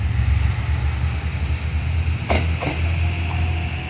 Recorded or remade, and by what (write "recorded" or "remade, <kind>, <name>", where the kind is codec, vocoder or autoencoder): recorded